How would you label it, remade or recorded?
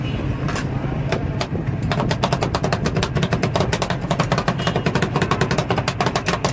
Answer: remade